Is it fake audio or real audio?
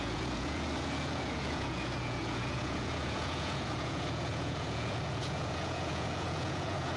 fake